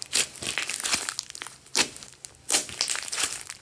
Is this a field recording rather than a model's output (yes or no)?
yes